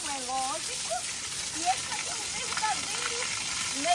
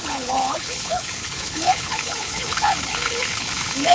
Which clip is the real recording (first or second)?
first